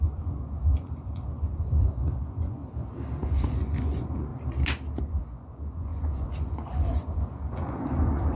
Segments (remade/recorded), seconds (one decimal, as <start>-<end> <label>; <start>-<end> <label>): 0.0-2.6 remade; 2.6-3.2 recorded; 3.2-4.3 remade; 4.3-5.0 recorded; 5.0-8.3 remade